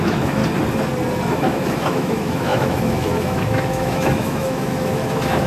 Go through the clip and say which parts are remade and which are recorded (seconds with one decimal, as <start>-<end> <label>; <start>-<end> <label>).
0.0-0.4 remade; 0.4-1.3 recorded; 1.3-5.5 remade